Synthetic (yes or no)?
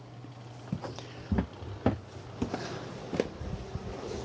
no